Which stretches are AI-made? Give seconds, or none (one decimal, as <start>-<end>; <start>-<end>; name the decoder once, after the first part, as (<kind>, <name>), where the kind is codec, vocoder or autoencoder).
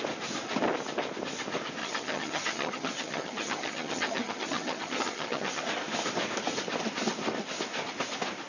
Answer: 1.8-5.6 (vocoder, HiFi-GAN)